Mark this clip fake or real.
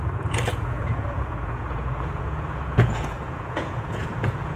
fake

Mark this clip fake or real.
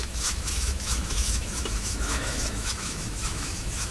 fake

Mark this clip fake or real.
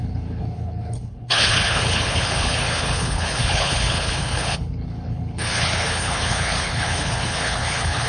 fake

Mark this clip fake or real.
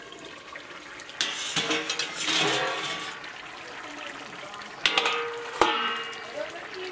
real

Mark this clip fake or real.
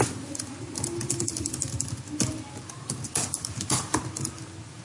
real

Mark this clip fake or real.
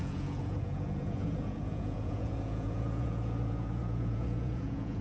fake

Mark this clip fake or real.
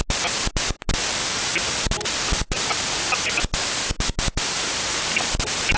real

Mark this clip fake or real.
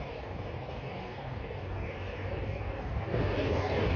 fake